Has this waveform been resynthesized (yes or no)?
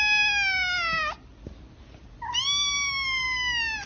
no